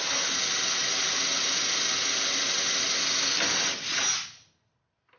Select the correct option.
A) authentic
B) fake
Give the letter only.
A